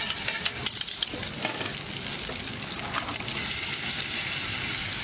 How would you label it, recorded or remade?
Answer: recorded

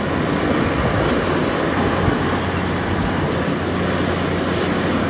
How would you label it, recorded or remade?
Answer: recorded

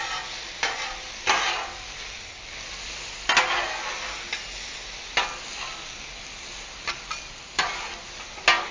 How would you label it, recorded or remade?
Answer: recorded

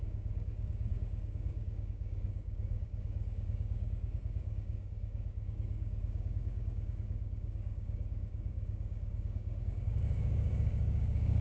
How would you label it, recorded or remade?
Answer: remade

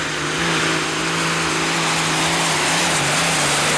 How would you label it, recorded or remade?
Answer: recorded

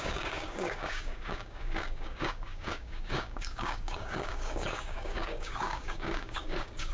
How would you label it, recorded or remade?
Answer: remade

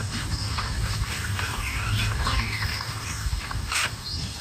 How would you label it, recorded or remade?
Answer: remade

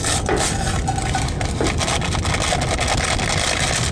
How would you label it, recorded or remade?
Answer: recorded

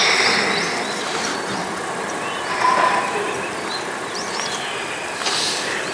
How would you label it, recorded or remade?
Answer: recorded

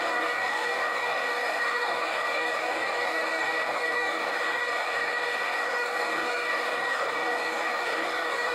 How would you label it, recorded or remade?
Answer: remade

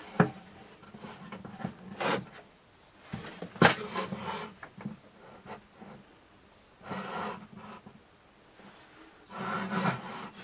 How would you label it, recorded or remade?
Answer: recorded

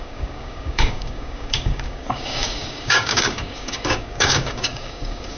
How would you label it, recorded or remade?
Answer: remade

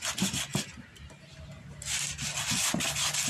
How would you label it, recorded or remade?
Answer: recorded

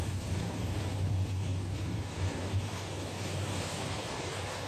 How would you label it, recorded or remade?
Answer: remade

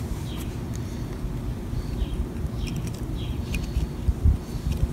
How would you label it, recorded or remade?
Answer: recorded